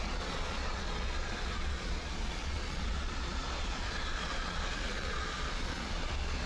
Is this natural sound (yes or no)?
no